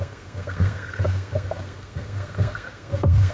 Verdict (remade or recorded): remade